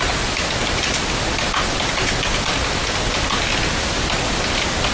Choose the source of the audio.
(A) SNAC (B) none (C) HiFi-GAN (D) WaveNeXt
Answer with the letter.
B